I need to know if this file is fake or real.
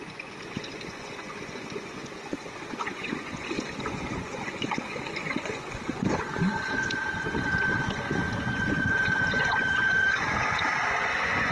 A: fake